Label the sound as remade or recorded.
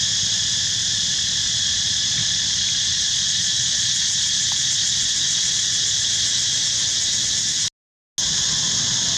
recorded